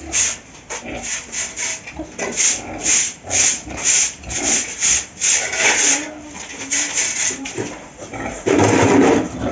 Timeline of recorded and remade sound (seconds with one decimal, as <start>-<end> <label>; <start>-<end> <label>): 0.0-2.8 recorded; 2.8-5.9 remade; 5.9-7.2 recorded; 7.2-9.1 remade; 9.1-9.5 recorded